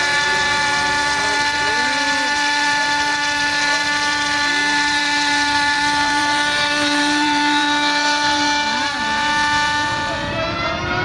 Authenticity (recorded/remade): remade